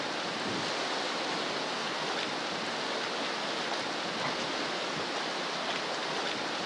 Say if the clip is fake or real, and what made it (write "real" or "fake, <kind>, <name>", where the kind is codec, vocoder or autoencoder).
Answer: real